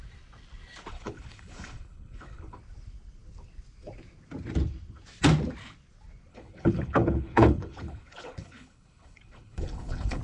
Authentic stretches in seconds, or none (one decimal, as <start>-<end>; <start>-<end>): 0.0-0.9; 2.6-6.3